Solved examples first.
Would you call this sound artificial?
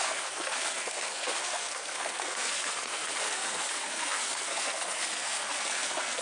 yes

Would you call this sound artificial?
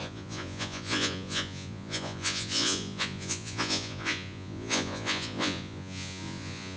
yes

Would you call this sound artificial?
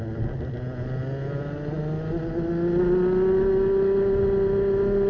no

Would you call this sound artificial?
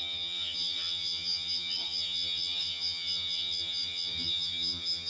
yes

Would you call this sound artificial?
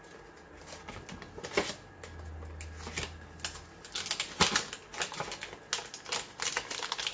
no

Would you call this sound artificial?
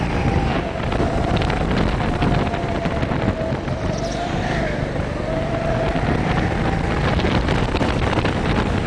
no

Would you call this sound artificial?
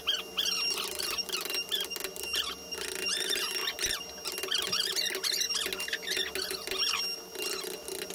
no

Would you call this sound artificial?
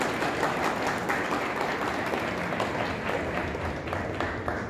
no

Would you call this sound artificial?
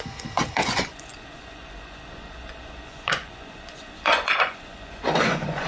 yes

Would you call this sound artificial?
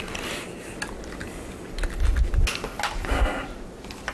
no